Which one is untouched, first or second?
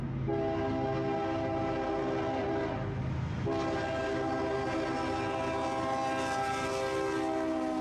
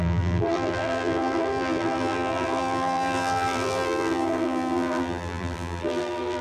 first